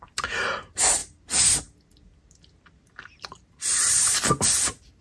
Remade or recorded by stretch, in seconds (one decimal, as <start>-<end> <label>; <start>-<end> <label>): 0.0-5.0 recorded